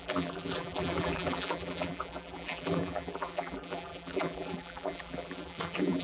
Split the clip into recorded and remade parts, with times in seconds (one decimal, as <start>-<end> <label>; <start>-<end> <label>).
0.0-6.0 remade